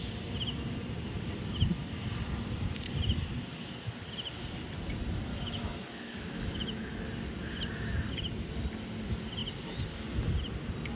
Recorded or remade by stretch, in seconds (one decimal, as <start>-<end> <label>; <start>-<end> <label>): 0.0-5.3 recorded; 5.3-7.0 remade; 7.0-11.0 recorded